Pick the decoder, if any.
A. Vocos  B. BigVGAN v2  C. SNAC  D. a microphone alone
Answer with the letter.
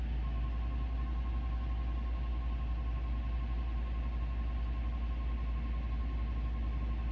D